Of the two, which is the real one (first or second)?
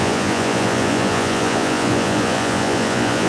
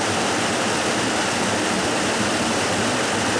second